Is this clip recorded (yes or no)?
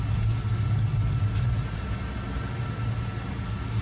yes